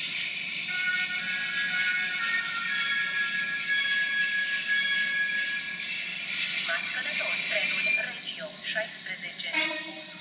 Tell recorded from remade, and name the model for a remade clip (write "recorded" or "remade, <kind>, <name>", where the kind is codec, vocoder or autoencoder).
recorded